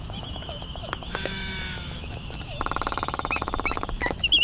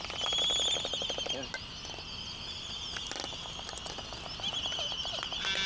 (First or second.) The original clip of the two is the second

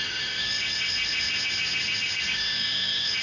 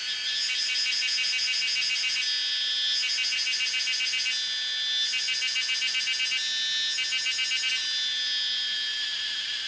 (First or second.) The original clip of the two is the second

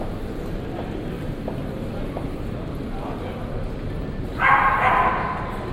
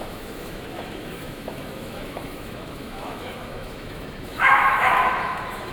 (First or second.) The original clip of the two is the first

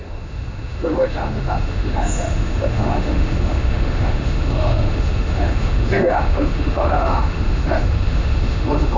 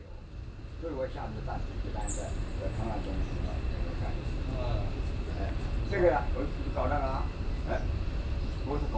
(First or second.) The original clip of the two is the second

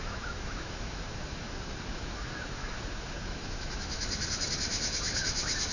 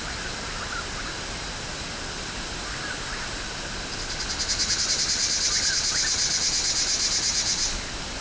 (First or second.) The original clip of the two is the second